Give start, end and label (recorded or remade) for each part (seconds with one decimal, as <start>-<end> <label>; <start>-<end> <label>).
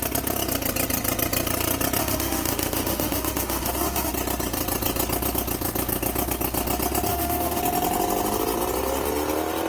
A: 0.0-2.0 recorded; 2.0-4.1 remade; 4.1-7.1 recorded; 7.1-7.6 remade; 7.6-9.7 recorded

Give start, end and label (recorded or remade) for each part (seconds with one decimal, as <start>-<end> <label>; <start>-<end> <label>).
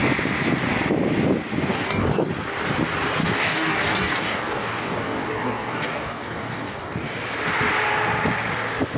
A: 0.0-1.7 recorded; 1.7-2.3 remade; 2.3-3.2 recorded; 3.2-7.2 remade; 7.2-9.0 recorded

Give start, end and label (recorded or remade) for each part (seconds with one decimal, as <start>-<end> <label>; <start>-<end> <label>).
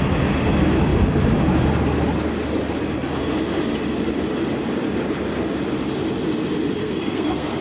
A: 0.0-6.8 recorded; 6.8-7.6 remade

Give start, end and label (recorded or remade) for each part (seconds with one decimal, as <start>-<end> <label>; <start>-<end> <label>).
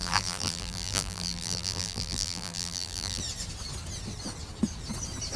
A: 0.0-3.2 remade; 3.2-5.4 recorded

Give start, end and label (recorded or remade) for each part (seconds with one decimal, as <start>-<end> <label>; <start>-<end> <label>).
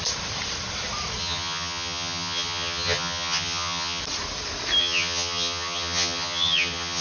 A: 0.0-1.2 recorded; 1.2-4.0 remade; 4.0-4.8 recorded; 4.8-7.0 remade